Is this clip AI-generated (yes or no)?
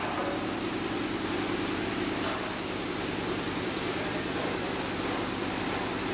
yes